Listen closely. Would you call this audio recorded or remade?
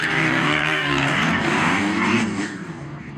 remade